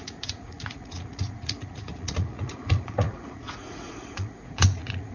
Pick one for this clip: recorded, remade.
remade